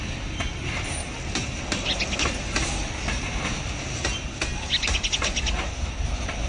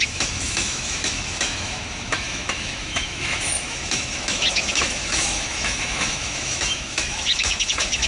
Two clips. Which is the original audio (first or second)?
first